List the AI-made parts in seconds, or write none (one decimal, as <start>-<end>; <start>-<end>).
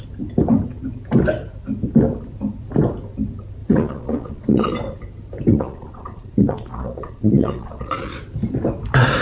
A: 3.6-4.7; 5.5-8.2